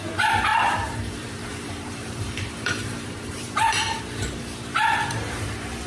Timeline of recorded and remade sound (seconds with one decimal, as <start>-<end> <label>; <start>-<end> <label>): 0.0-0.5 recorded; 0.5-4.0 remade; 4.0-5.9 recorded